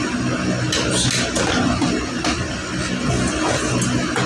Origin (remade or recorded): recorded